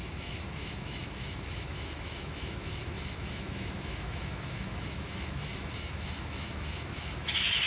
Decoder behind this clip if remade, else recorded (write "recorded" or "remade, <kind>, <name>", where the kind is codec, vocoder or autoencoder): remade, autoencoder, DAC-VAE